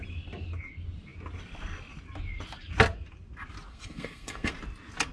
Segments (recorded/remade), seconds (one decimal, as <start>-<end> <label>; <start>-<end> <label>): 0.0-3.7 recorded; 3.7-4.5 remade; 4.5-5.1 recorded